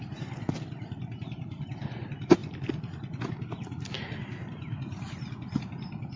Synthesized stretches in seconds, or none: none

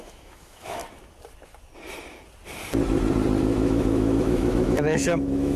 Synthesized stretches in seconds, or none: 0.0-0.8 (autoencoder, DAC-VAE); 3.4-5.6

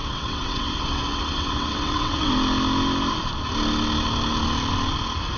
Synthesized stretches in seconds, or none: 0.0-2.3 (vocoder, WaveNeXt)

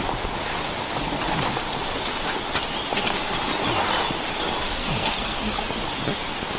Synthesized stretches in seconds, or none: 4.8-5.4 (codec, SNAC)

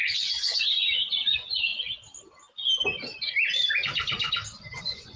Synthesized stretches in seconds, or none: 0.0-1.7 (vocoder, Vocos); 4.8-5.2

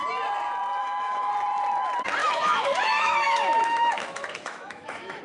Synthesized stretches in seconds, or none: 0.8-1.3 (autoencoder, DAC-VAE); 2.2-5.2